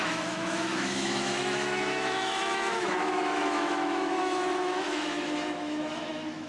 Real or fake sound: fake